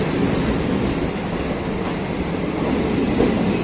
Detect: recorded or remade recorded